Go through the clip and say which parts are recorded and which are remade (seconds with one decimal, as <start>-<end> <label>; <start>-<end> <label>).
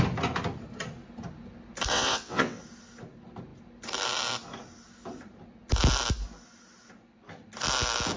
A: 0.0-1.9 recorded; 1.9-2.6 remade; 2.6-8.2 recorded